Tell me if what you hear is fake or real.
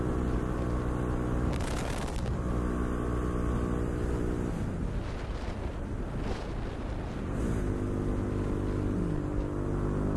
real